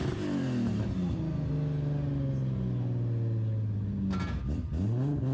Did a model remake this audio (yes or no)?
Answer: no